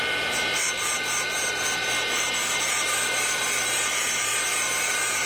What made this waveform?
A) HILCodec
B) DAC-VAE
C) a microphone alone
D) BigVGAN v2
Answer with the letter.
D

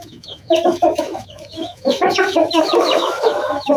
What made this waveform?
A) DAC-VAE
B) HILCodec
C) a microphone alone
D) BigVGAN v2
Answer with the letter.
A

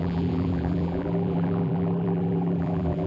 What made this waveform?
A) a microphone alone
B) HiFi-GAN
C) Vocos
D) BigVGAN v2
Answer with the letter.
D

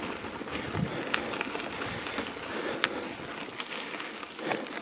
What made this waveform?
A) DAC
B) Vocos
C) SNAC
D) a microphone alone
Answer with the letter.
D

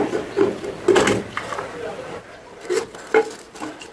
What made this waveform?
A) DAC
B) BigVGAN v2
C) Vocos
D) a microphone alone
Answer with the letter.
D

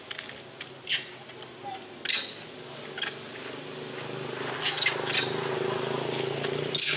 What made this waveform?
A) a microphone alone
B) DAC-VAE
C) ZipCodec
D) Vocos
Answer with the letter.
A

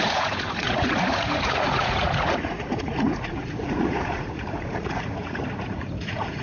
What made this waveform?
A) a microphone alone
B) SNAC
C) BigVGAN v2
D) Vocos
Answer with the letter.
D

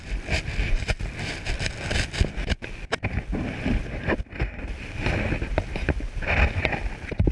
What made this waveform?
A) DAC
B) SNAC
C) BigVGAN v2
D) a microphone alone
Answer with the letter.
D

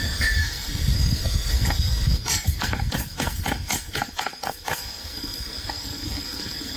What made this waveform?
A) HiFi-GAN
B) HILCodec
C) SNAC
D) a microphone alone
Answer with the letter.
C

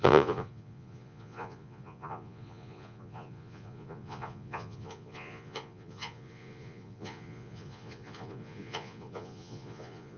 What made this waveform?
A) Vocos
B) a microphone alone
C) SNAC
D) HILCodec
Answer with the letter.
A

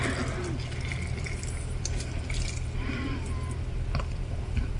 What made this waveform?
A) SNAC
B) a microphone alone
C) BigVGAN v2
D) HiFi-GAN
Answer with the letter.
B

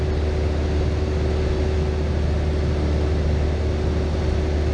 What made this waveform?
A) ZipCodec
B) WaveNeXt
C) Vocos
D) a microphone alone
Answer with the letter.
D